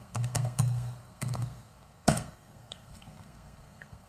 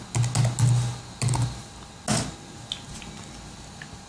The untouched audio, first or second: second